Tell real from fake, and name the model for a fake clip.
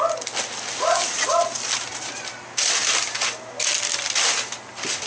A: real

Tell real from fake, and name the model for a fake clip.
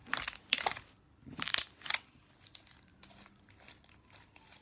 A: real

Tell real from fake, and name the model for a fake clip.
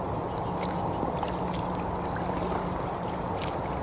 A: real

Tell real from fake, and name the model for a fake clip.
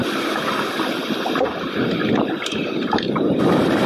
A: real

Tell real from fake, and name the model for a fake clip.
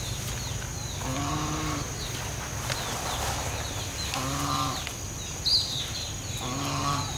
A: real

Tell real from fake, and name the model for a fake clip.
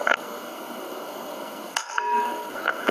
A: fake, codec, SNAC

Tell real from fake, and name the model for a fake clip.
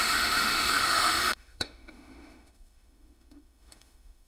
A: fake, autoencoder, DAC-VAE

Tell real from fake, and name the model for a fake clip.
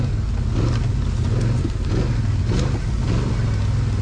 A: real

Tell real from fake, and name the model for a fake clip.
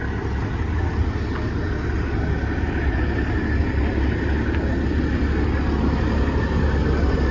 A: real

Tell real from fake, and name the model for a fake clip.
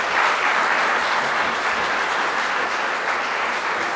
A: real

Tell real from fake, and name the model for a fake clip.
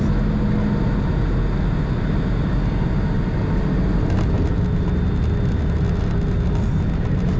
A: real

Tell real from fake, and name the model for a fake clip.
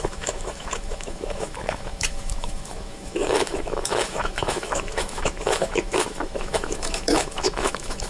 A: fake, autoencoder, DAC-VAE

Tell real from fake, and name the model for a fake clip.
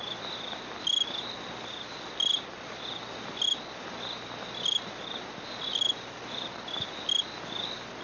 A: real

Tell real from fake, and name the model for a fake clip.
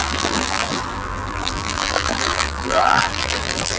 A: fake, vocoder, BigVGAN v2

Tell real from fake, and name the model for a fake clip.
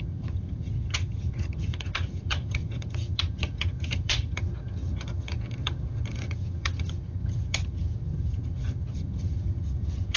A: fake, vocoder, HiFi-GAN